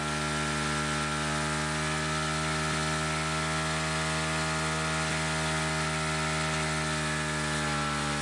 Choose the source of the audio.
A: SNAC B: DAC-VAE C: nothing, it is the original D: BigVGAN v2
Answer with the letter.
C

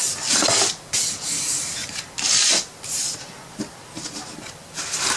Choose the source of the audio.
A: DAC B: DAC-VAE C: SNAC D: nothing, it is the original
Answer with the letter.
D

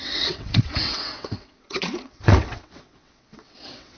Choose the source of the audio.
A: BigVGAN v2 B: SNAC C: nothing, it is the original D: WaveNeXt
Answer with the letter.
D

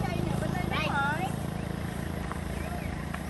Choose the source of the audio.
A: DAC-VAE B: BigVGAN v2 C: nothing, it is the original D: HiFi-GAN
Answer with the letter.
B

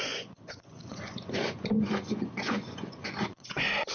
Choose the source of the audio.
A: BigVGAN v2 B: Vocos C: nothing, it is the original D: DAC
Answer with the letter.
B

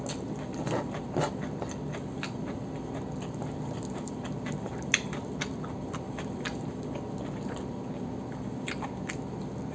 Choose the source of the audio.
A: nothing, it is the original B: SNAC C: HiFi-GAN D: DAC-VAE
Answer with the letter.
A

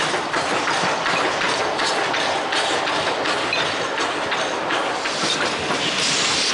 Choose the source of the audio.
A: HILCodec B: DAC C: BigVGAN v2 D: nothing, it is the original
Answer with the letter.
D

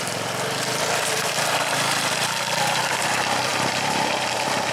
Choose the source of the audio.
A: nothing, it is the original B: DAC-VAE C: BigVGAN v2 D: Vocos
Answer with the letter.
C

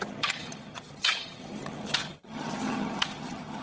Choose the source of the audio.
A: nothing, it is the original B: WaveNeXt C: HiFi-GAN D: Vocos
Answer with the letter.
C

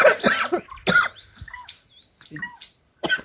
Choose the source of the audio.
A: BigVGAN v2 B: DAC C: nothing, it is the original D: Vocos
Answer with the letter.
C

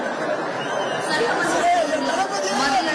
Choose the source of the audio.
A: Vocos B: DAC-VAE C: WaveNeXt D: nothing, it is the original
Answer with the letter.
D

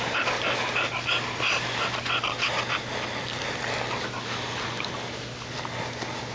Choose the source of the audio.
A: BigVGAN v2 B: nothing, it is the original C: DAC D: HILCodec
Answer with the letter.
B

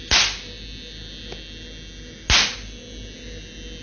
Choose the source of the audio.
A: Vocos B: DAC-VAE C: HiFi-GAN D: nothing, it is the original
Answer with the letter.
D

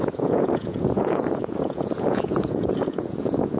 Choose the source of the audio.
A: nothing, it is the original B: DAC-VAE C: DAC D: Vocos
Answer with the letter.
D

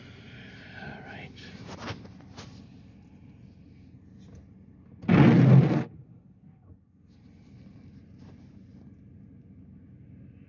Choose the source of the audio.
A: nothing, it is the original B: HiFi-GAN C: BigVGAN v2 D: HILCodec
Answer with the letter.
A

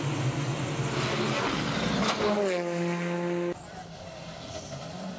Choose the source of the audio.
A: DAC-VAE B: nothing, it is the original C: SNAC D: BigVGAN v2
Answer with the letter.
B